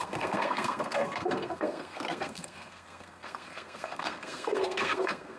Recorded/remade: remade